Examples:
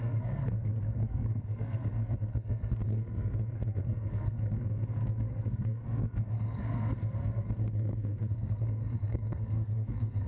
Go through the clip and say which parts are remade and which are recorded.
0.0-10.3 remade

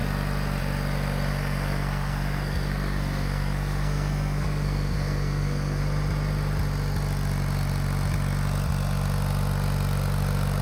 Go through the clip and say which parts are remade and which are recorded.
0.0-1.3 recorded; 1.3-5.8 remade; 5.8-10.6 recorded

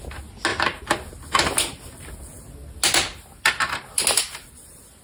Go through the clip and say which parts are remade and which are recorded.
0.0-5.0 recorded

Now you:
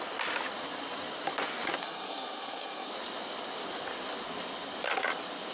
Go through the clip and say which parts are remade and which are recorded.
0.0-1.8 recorded; 1.8-2.9 remade; 2.9-5.5 recorded

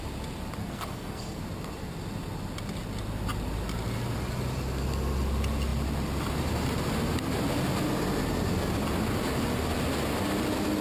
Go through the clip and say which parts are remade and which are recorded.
0.0-0.6 recorded; 0.6-1.4 remade; 1.4-10.8 recorded

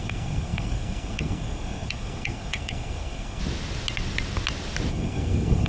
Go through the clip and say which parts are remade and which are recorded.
0.0-3.4 remade; 3.4-4.9 recorded; 4.9-5.7 remade

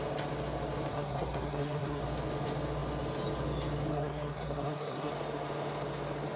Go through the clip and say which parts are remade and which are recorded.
0.0-0.9 recorded; 0.9-2.0 remade; 2.0-3.9 recorded; 3.9-5.1 remade; 5.1-6.4 recorded

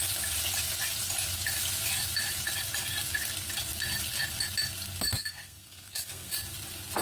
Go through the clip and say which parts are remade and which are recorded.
0.0-5.1 recorded; 5.1-6.3 remade; 6.3-7.0 recorded